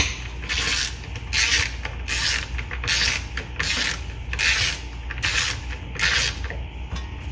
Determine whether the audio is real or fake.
real